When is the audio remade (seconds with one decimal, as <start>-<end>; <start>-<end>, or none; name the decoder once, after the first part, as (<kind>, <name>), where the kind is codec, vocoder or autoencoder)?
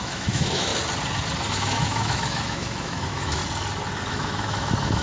0.0-0.7 (autoencoder, DAC-VAE); 1.5-3.4; 4.1-5.0